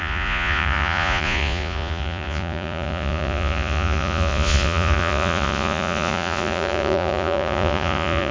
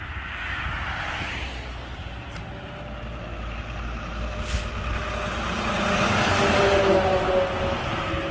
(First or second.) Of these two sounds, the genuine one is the second